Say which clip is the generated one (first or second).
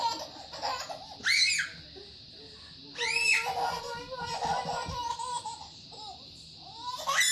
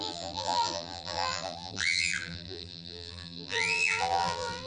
second